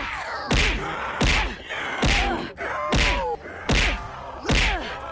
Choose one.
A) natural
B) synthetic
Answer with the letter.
A